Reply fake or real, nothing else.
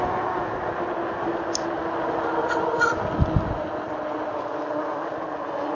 real